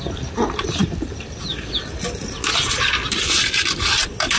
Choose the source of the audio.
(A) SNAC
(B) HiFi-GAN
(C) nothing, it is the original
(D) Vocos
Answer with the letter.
C